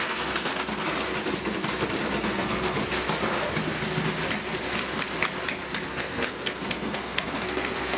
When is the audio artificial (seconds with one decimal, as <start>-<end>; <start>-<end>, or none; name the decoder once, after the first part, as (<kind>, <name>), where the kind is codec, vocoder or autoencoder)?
0.0-0.5 (codec, SNAC); 2.2-2.8; 5.9-8.0